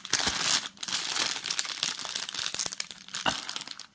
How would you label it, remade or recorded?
recorded